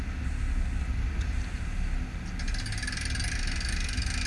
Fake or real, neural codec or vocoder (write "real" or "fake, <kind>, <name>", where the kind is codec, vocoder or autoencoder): real